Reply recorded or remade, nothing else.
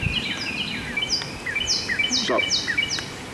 recorded